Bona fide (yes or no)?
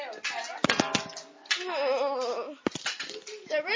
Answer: yes